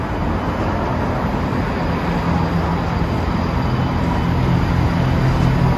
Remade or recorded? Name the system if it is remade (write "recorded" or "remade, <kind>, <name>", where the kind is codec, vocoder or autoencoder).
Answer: recorded